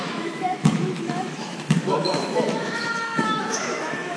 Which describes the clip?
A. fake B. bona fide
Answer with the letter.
A